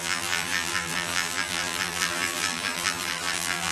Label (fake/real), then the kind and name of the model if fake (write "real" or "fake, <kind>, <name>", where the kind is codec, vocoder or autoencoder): fake, vocoder, BigVGAN v2